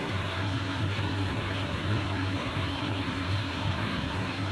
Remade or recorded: remade